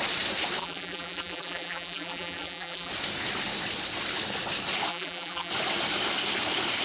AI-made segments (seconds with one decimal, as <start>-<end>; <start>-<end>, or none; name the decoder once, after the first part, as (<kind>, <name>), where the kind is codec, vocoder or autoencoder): 0.6-2.9 (vocoder, BigVGAN v2); 4.9-5.5